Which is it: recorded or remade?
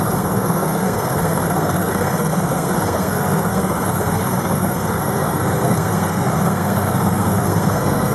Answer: remade